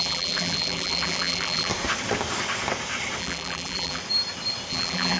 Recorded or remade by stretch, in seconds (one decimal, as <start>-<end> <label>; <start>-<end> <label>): 0.0-1.7 remade; 1.7-3.2 recorded; 3.2-4.0 remade; 4.0-4.7 recorded; 4.7-5.2 remade